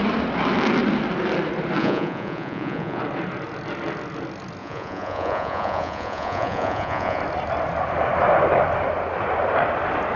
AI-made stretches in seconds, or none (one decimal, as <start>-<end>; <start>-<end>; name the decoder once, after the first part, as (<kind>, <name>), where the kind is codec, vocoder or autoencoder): 1.8-3.0 (vocoder, Vocos); 4.6-7.2